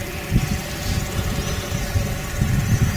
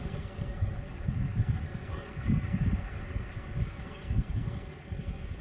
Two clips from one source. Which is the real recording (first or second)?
first